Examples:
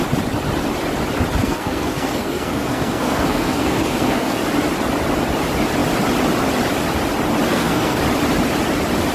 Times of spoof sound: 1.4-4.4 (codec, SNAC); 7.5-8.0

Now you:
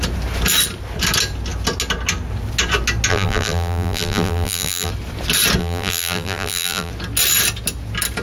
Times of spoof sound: 3.1-4.9 (vocoder, BigVGAN v2); 5.6-6.9

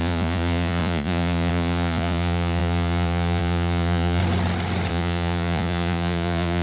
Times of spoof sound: 0.0-4.2 (vocoder, Vocos); 4.9-6.6

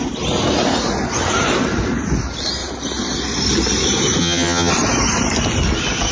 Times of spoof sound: 4.2-4.7 (vocoder, HiFi-GAN)

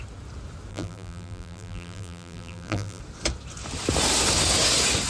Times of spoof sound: 0.7-3.0 (vocoder, BigVGAN v2)

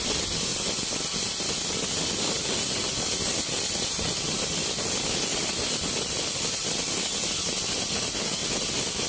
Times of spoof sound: 0.5-3.1 (vocoder, BigVGAN v2); 8.4-9.1

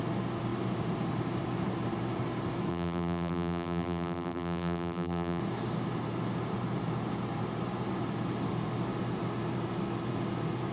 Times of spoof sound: 2.7-5.4 (vocoder, BigVGAN v2)